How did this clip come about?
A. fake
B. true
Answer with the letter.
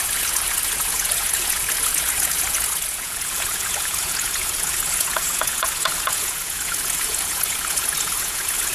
A